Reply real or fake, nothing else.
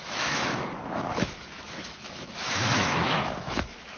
fake